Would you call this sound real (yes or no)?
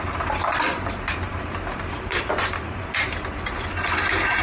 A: no